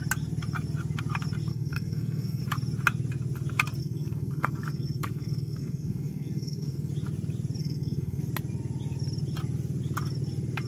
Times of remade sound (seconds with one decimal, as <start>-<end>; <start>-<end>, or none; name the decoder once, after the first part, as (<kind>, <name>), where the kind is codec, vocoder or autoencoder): 1.5-2.4 (codec, SNAC); 3.8-6.9; 7.6-8.2